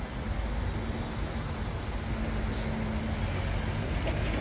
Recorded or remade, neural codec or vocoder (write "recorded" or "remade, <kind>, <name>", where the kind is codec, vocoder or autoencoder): recorded